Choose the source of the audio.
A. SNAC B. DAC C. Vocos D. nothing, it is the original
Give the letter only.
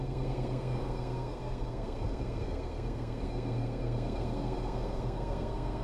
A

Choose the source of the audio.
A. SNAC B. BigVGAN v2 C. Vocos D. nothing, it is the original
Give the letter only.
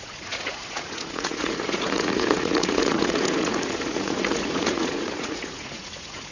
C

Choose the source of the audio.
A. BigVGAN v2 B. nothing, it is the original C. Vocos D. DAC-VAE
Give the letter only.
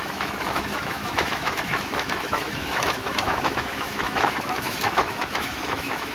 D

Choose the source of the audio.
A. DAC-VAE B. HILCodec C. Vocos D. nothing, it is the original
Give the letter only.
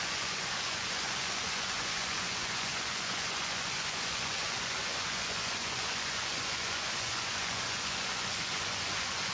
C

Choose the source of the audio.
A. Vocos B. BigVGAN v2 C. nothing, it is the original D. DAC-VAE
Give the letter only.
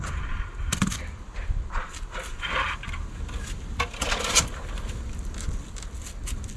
B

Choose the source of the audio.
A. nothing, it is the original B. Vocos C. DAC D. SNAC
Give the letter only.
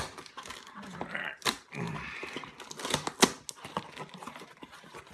A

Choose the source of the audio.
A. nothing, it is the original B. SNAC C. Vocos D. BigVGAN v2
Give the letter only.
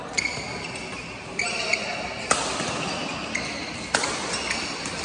D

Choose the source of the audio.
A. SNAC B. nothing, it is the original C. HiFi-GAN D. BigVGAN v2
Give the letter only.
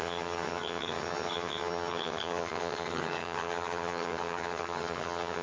C